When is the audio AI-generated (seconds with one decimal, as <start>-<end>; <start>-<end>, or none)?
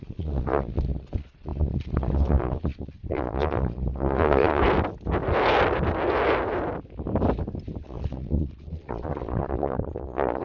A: 0.0-4.6; 7.8-10.4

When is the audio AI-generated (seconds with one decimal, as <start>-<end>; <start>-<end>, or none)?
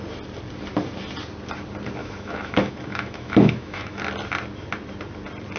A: 2.0-4.0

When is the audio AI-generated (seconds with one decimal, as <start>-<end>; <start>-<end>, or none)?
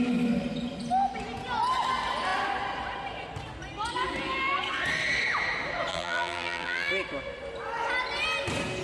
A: 5.9-6.9